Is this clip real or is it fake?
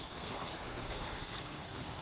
fake